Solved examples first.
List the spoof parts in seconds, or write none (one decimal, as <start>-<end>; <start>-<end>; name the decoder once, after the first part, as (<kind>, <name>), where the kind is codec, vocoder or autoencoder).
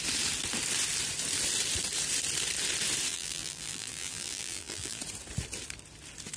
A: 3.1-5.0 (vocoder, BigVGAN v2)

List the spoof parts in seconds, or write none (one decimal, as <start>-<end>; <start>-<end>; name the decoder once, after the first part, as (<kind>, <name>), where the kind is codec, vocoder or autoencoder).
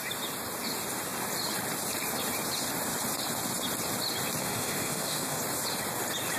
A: 4.4-5.4 (autoencoder, DAC-VAE)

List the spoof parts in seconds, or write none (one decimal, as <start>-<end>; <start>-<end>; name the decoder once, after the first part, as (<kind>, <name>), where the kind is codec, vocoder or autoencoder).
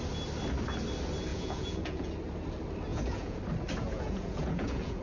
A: 1.3-2.1 (vocoder, Vocos); 2.9-3.4; 3.8-5.0